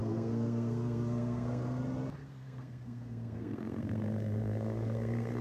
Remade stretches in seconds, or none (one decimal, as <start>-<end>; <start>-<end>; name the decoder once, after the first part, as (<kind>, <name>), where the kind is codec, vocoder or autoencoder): 0.0-1.8 (codec, SNAC); 2.2-5.4

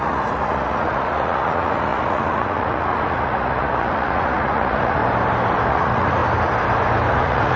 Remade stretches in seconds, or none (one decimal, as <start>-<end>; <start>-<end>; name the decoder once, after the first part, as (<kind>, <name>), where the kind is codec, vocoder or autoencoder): 0.0-5.0 (vocoder, Vocos); 5.7-6.2; 7.1-7.6